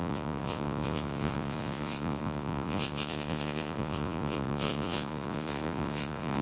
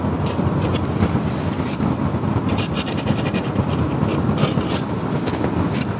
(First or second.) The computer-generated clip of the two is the first